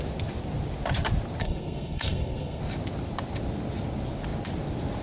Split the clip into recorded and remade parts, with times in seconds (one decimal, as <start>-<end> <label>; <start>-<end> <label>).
0.0-1.4 recorded; 1.4-2.6 remade; 2.6-5.0 recorded